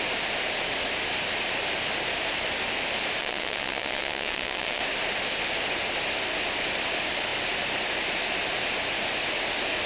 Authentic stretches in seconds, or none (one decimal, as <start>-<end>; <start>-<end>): 0.0-3.2; 4.8-9.9